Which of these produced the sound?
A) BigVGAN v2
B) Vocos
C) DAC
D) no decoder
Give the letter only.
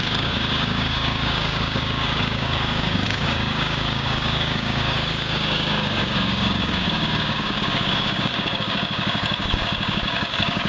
C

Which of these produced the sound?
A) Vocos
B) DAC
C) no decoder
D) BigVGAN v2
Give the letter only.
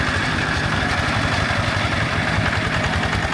C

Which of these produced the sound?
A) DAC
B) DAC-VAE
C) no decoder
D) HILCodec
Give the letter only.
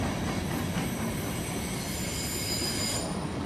C